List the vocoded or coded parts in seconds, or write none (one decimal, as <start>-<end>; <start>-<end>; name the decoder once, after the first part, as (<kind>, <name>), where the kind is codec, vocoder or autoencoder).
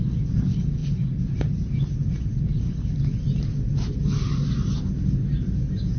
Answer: none